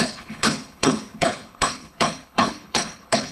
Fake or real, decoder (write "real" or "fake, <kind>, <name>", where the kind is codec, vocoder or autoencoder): fake, codec, HILCodec